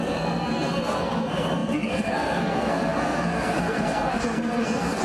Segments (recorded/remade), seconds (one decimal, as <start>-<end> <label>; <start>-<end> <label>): 0.0-5.0 remade